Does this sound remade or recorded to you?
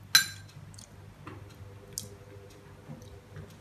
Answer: recorded